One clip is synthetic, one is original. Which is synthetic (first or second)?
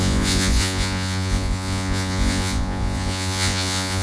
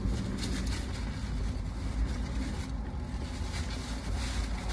first